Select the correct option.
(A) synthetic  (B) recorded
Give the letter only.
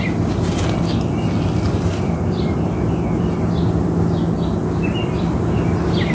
B